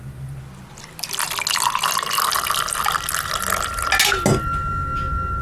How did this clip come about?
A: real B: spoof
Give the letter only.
A